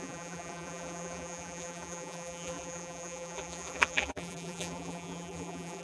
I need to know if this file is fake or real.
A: fake